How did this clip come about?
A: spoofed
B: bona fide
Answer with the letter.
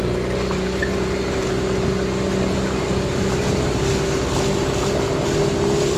B